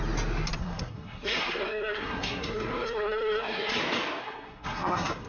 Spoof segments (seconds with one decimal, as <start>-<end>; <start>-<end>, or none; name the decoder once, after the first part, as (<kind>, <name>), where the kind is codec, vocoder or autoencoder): 0.6-3.8 (codec, SNAC); 4.2-5.3